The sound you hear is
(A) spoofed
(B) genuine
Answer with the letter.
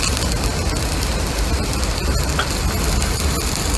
B